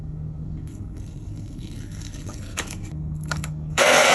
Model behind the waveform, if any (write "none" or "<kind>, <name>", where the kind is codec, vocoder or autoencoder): codec, SNAC